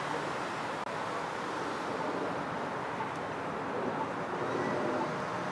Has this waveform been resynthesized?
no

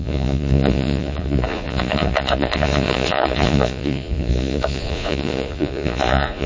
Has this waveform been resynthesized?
yes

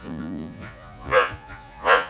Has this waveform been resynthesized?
yes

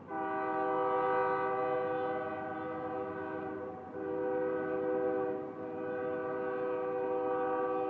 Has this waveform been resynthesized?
no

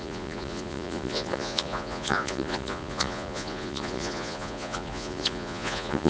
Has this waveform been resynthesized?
yes